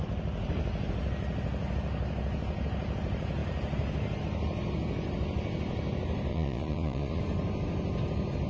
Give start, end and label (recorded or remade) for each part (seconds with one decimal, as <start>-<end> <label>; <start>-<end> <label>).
0.0-6.3 recorded; 6.3-7.2 remade; 7.2-8.5 recorded